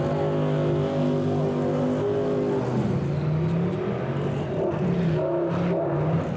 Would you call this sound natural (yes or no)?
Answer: yes